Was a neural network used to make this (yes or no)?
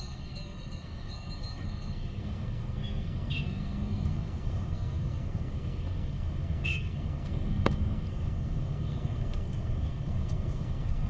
yes